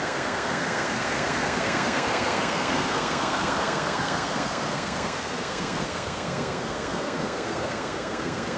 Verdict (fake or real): fake